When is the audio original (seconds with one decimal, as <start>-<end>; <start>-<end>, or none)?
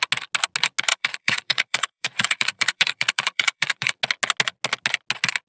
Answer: 0.0-0.9; 4.0-5.5